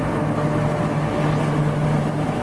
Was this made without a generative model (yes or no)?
yes